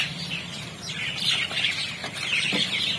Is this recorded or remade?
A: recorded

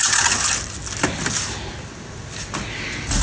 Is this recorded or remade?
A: recorded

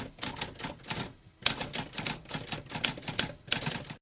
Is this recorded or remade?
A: recorded